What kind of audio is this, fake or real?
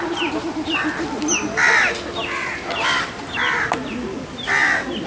real